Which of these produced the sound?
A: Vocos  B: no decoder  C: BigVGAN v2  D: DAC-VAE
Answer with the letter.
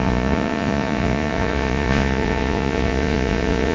A